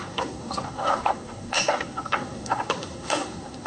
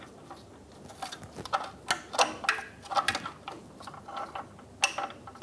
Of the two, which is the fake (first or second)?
first